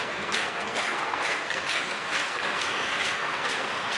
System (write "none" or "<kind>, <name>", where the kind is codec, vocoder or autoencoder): codec, SNAC